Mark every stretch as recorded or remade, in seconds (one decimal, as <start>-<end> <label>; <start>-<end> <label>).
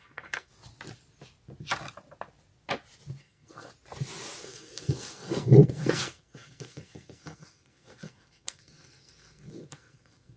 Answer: 0.0-0.5 remade; 0.5-3.2 recorded; 3.2-3.7 remade; 3.7-4.4 recorded; 4.4-10.4 remade